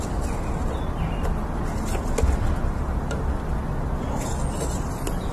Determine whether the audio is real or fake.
real